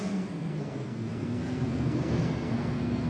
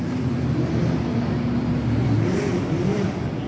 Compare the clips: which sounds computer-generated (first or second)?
first